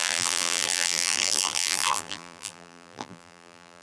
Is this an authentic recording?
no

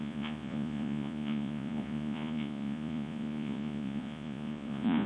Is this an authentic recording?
no